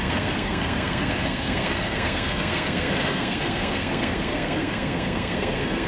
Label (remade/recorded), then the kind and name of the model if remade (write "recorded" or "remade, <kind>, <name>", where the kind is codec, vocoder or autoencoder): remade, codec, SNAC